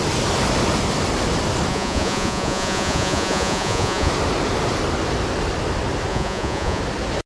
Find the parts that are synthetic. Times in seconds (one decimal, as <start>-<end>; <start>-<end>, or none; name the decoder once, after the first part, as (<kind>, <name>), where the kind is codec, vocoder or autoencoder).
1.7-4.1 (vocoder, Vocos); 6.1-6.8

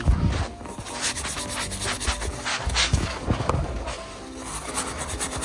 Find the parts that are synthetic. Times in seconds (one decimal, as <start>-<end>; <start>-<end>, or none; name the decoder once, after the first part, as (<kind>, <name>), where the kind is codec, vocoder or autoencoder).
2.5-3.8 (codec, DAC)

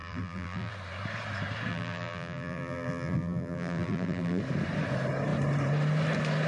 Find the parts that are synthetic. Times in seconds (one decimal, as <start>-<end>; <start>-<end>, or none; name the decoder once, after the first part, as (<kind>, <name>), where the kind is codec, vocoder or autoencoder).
0.0-0.7 (vocoder, BigVGAN v2); 1.7-4.4

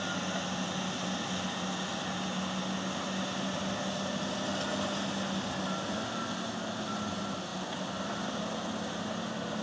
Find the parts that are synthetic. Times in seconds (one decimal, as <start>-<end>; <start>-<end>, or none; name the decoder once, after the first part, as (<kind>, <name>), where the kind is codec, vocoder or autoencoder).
none

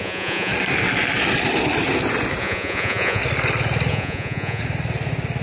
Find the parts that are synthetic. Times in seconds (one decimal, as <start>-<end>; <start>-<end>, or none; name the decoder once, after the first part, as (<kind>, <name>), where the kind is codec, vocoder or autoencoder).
0.0-0.5 (vocoder, Vocos); 2.4-3.2; 3.9-4.6

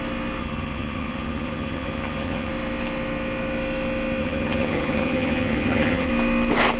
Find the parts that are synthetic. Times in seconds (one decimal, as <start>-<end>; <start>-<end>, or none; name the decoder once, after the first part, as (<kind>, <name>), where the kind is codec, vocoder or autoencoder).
0.4-2.5 (vocoder, HiFi-GAN); 4.2-6.1

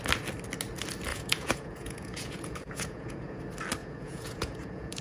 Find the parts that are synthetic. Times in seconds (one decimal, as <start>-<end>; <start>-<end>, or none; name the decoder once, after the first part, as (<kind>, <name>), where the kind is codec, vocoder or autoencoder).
1.1-3.4 (vocoder, Vocos); 3.8-5.0

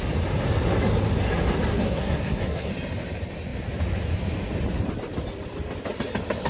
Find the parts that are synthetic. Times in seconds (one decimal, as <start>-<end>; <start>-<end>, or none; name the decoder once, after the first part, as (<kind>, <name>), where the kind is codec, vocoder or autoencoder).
1.7-2.7 (codec, SNAC)